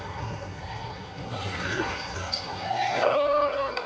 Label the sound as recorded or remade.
remade